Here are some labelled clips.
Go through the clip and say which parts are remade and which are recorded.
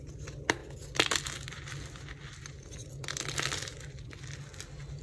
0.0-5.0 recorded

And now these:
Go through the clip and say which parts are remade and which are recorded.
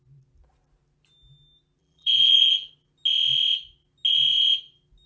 0.0-1.8 recorded; 1.8-2.7 remade; 2.7-5.1 recorded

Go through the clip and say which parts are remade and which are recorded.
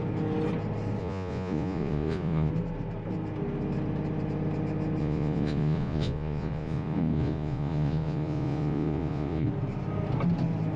0.0-1.0 recorded; 1.0-2.5 remade; 2.5-5.0 recorded; 5.0-9.5 remade; 9.5-10.8 recorded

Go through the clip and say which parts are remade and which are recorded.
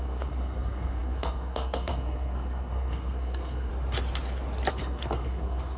0.0-3.7 remade; 3.7-4.7 recorded; 4.7-5.8 remade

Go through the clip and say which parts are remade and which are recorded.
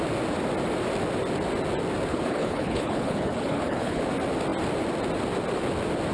0.0-2.1 recorded; 2.1-4.0 remade; 4.0-6.1 recorded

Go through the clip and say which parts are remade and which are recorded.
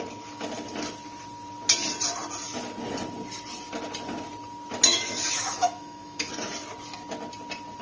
0.0-4.9 recorded; 4.9-6.3 remade; 6.3-7.8 recorded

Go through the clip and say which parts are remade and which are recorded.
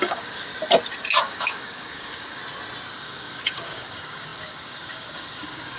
0.0-0.5 remade; 0.5-1.2 recorded; 1.2-2.4 remade; 2.4-2.9 recorded; 2.9-5.8 remade